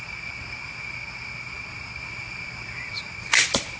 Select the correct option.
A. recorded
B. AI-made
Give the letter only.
A